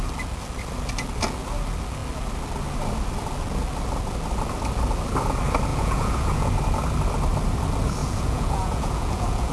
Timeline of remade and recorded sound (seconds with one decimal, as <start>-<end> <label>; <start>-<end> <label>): 0.0-5.7 recorded; 5.7-6.5 remade; 6.5-8.0 recorded; 8.0-9.5 remade